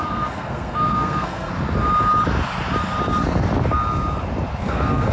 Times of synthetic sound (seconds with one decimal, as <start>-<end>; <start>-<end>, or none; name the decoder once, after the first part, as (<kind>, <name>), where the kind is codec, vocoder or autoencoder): 0.0-1.5 (codec, SNAC); 4.6-5.1